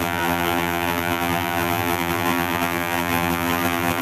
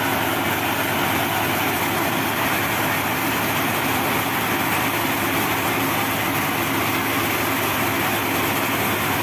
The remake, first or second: first